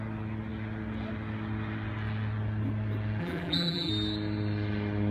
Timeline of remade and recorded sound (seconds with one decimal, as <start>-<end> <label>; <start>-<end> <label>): 0.0-3.2 recorded; 3.2-3.9 remade; 3.9-5.1 recorded